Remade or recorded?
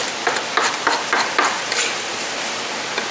remade